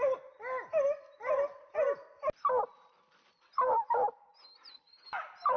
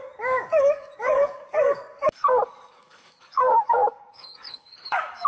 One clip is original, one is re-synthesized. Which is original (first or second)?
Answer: first